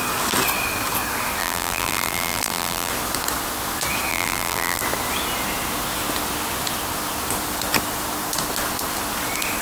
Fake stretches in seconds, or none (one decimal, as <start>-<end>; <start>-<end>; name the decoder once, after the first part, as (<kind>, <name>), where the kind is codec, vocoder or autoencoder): 1.4-2.9 (vocoder, BigVGAN v2); 4.1-4.8